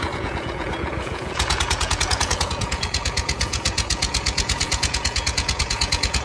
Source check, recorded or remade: remade